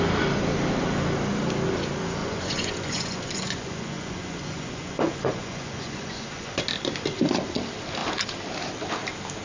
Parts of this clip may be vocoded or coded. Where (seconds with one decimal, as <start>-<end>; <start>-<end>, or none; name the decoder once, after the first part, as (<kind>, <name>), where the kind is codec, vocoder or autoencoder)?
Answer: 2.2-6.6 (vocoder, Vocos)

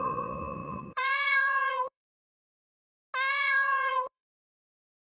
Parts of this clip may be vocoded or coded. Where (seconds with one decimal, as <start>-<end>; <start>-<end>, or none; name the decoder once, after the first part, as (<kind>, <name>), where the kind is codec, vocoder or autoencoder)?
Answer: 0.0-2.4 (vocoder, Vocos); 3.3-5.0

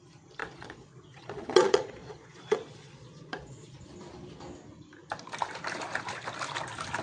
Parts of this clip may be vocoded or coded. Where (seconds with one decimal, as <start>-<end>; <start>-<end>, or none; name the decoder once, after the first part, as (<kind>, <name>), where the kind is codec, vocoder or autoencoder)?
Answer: 0.4-3.8 (vocoder, Vocos)

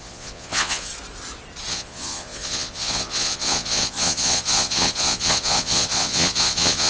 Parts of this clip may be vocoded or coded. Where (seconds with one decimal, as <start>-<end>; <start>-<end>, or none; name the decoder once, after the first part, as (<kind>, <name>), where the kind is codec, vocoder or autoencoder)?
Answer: 0.0-0.9 (vocoder, Vocos); 1.7-6.9

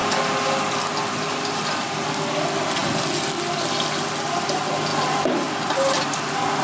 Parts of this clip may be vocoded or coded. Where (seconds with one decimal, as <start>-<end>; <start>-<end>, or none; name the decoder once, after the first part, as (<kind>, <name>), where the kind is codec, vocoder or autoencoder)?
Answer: none